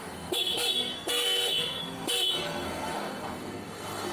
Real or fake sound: fake